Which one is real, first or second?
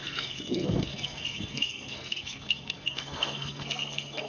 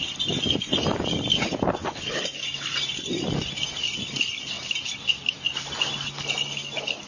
second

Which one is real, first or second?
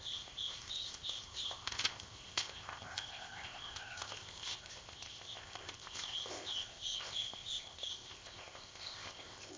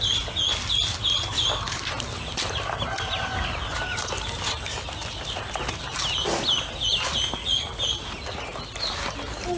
second